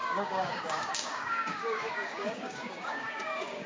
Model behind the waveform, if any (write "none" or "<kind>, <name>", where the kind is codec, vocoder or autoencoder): codec, DAC